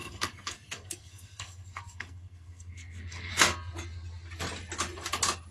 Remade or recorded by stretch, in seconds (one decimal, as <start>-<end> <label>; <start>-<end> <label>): 0.0-3.3 remade; 3.3-5.5 recorded